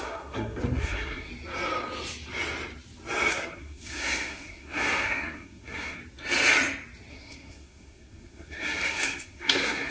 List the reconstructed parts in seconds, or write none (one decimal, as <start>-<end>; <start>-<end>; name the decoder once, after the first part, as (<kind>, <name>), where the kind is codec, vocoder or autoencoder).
0.0-1.3 (codec, SNAC); 3.3-6.0; 7.1-9.9